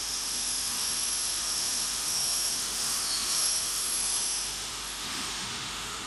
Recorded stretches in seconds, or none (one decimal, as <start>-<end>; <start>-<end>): none